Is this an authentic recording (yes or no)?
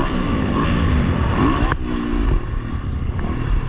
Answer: yes